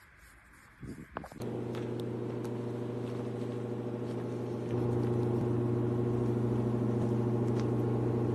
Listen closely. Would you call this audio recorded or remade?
recorded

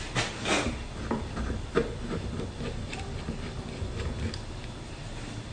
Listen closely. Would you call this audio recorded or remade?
recorded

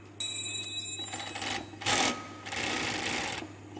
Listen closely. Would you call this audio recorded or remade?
recorded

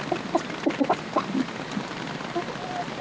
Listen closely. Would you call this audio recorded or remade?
recorded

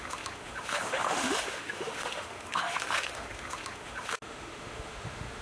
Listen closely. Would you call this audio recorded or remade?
remade